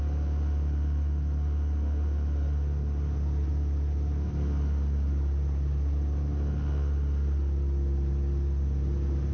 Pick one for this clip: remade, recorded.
recorded